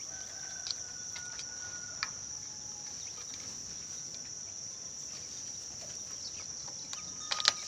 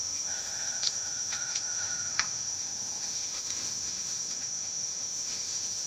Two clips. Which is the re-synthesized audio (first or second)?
second